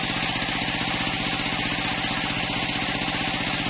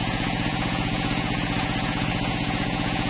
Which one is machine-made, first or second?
second